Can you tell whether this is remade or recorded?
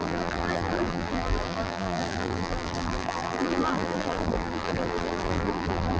remade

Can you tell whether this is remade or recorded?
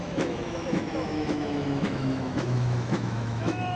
remade